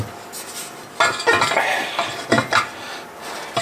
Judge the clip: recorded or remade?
recorded